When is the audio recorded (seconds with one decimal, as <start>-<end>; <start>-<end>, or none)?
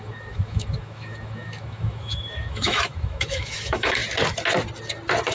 4.0-5.3